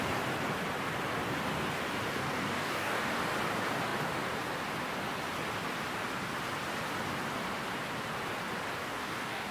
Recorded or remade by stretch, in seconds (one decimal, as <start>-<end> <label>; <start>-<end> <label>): 0.0-2.2 recorded; 2.2-3.1 remade; 3.1-8.8 recorded; 8.8-9.5 remade